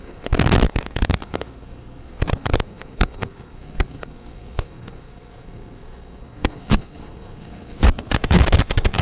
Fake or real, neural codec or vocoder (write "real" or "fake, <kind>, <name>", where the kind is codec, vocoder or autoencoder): fake, codec, SNAC